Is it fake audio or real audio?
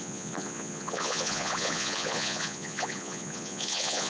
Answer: fake